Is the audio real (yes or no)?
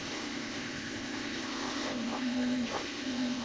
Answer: no